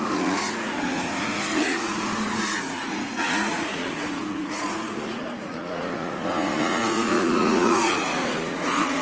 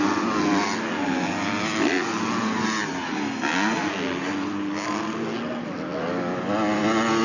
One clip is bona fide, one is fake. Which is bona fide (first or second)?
second